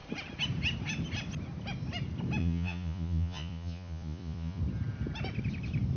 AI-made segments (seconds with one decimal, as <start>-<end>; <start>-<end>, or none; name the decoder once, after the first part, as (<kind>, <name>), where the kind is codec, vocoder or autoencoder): 2.4-4.6 (vocoder, Vocos)